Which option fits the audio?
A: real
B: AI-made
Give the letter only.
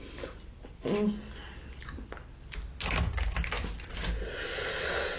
A